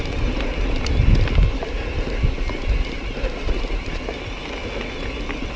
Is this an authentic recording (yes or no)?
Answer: yes